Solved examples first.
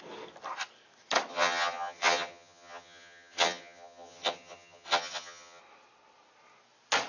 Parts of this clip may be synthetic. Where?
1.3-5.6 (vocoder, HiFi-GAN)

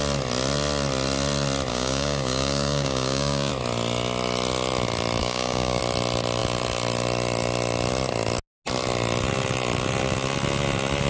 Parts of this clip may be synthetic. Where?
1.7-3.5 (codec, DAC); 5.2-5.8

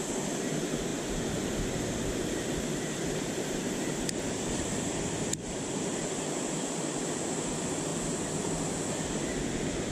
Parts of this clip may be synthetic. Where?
0.0-7.9 (vocoder, BigVGAN v2)

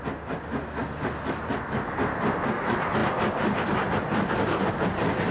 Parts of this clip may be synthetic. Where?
none

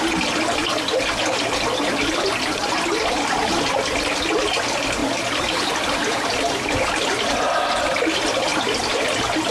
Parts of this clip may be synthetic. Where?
5.0-7.4 (vocoder, BigVGAN v2); 8.5-9.5

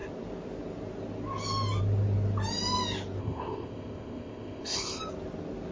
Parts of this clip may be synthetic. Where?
3.2-5.0 (codec, ZipCodec)

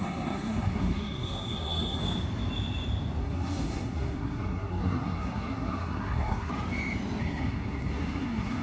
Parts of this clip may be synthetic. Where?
0.0-2.0 (codec, SNAC); 3.2-6.5; 7.2-8.6

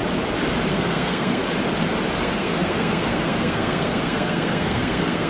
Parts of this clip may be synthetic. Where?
0.7-1.4 (codec, SNAC); 2.2-5.3